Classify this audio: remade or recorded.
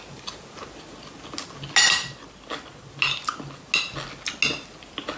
recorded